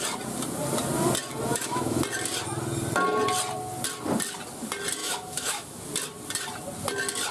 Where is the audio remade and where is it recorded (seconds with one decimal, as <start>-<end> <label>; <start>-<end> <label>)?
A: 0.0-1.5 recorded; 1.5-2.0 remade; 2.0-5.0 recorded; 5.0-5.8 remade; 5.8-7.3 recorded